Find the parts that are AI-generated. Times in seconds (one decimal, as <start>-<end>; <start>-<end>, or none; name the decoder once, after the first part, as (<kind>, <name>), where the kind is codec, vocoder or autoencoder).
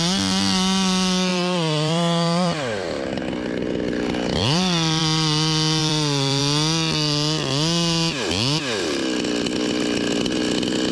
1.3-5.0 (vocoder, BigVGAN v2); 5.8-6.4